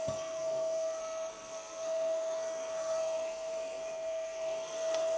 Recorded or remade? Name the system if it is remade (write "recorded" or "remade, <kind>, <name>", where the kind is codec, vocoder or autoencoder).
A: remade, codec, SNAC